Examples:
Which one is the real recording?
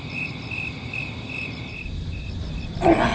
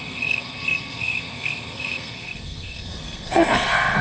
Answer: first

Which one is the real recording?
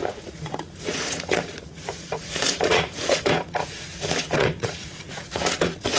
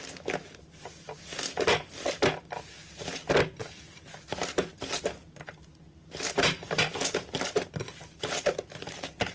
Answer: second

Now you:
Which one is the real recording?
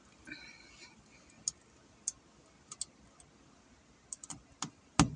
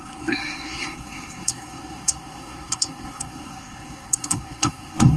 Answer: first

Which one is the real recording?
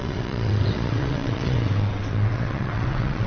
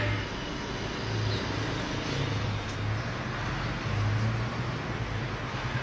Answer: second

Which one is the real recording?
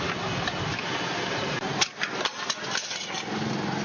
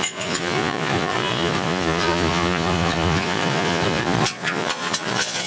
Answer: first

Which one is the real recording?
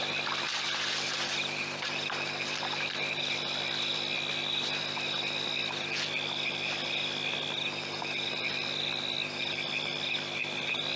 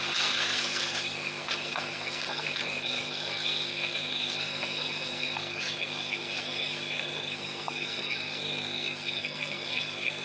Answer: first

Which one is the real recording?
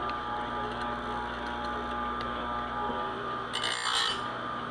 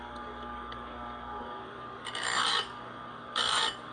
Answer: first